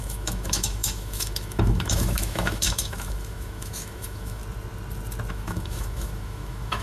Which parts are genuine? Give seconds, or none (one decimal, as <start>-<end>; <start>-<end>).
4.4-5.3